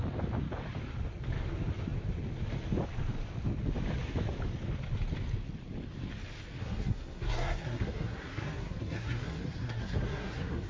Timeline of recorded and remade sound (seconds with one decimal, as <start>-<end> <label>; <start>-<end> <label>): 0.0-6.6 recorded; 6.6-10.7 remade